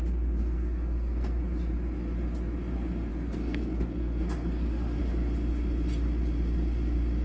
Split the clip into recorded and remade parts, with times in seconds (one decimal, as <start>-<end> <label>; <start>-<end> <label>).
0.0-0.4 recorded; 0.4-1.4 remade; 1.4-3.1 recorded; 3.1-5.0 remade; 5.0-7.2 recorded